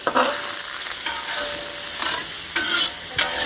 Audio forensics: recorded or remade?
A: recorded